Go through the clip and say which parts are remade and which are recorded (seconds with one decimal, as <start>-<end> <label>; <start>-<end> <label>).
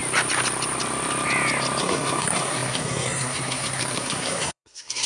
0.0-1.8 recorded; 1.8-5.1 remade